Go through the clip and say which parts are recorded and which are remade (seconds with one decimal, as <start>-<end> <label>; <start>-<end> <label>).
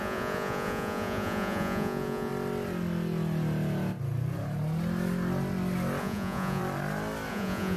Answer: 0.0-2.3 remade; 2.3-6.0 recorded; 6.0-6.6 remade; 6.6-7.3 recorded; 7.3-7.8 remade